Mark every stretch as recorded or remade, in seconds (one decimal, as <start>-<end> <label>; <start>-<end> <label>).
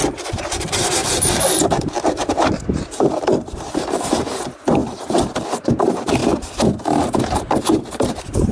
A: 0.0-4.8 remade; 4.8-5.5 recorded; 5.5-6.2 remade; 6.2-7.2 recorded; 7.2-8.5 remade